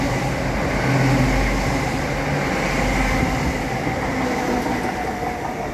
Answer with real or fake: real